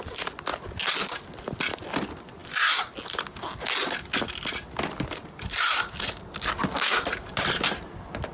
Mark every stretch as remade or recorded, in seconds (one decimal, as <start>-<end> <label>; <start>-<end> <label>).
0.0-7.1 recorded; 7.1-8.3 remade